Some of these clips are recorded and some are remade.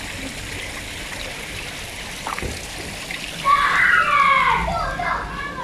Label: recorded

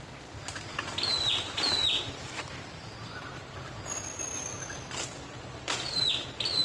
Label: recorded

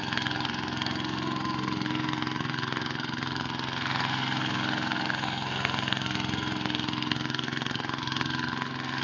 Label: remade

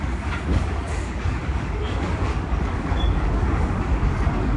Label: remade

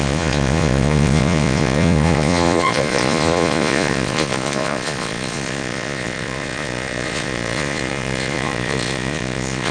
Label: remade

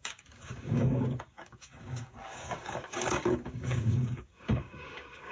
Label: remade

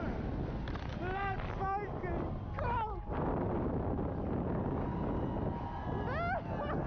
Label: recorded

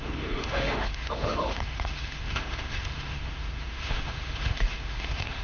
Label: remade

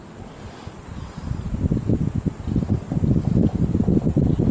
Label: recorded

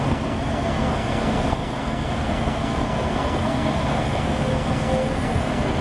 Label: remade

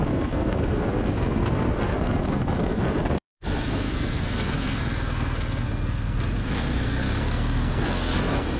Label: remade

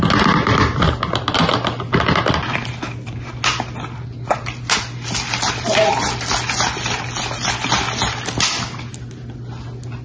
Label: recorded